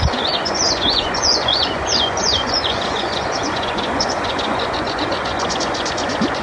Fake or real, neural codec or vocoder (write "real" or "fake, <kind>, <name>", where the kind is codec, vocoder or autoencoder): fake, vocoder, Vocos